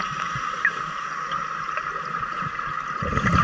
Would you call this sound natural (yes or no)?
yes